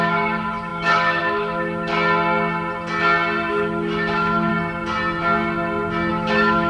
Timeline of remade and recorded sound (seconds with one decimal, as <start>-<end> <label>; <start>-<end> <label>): 0.0-1.9 remade; 1.9-3.5 recorded; 3.5-4.5 remade; 4.5-6.1 recorded; 6.1-6.7 remade